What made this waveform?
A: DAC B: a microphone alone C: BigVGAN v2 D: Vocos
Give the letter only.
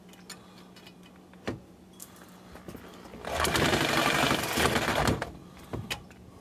B